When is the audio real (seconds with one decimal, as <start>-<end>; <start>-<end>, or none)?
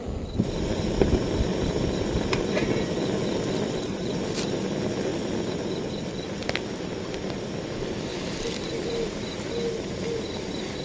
0.0-1.5; 2.4-8.1; 9.4-10.8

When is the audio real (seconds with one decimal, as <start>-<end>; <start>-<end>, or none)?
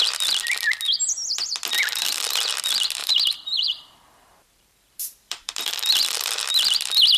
0.0-3.0; 5.7-7.2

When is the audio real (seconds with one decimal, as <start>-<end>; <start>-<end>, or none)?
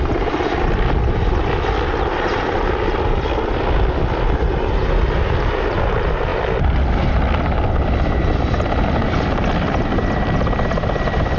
0.0-11.4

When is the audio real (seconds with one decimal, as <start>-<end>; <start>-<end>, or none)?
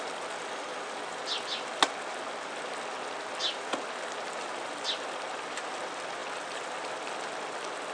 0.0-7.9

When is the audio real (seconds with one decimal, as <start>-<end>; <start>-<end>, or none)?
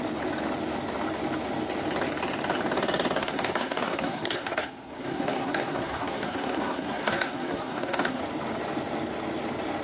0.0-3.2; 8.2-9.8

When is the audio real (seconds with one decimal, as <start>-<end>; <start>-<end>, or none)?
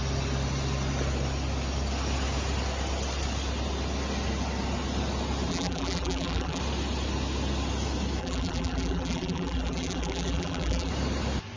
0.0-5.5; 6.6-8.2; 10.9-11.6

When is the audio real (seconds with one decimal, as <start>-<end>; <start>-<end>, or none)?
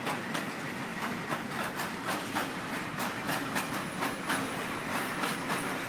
0.0-0.9; 3.6-4.9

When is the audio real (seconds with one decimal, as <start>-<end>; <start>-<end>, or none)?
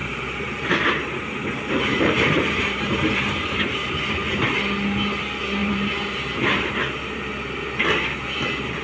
4.3-5.6; 6.7-8.8